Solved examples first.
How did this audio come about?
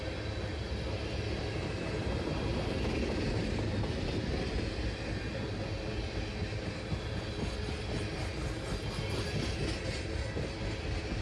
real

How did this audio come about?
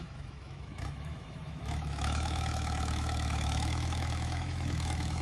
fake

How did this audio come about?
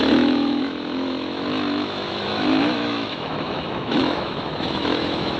fake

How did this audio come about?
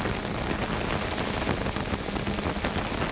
real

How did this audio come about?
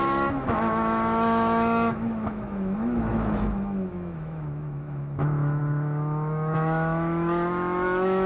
fake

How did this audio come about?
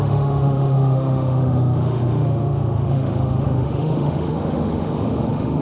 fake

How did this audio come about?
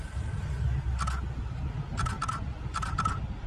real